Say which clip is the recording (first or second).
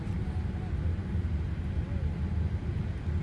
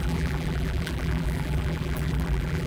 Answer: first